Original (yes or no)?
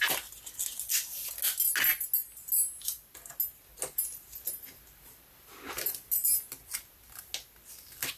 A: yes